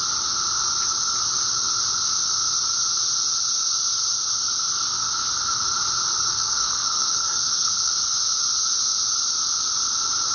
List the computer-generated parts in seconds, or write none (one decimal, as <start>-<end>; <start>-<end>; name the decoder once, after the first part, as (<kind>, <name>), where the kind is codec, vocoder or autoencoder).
6.3-7.9 (codec, SNAC)